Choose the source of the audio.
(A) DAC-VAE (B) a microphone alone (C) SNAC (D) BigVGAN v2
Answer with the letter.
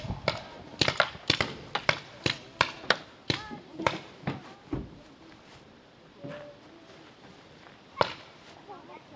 D